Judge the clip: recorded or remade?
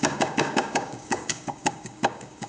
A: remade